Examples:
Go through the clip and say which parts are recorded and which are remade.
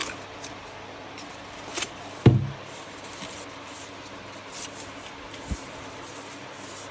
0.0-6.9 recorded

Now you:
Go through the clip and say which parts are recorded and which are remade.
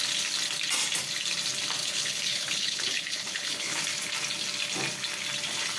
0.0-1.8 recorded; 1.8-3.8 remade; 3.8-5.8 recorded